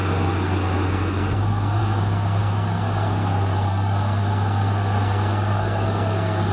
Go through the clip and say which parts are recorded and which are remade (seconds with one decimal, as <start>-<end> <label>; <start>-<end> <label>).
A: 0.0-6.5 remade